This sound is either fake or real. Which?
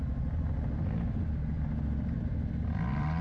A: real